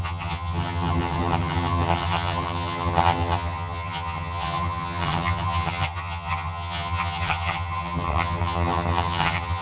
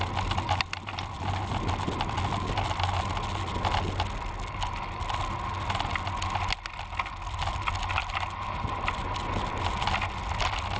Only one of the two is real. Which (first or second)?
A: second